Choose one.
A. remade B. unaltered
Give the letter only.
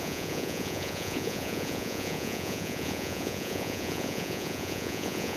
A